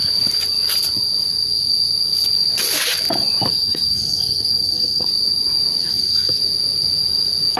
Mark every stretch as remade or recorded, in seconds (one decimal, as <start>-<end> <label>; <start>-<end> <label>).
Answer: 0.0-3.5 recorded; 3.5-5.1 remade; 5.1-5.8 recorded; 5.8-6.4 remade; 6.4-7.6 recorded